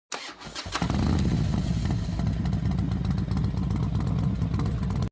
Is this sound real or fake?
real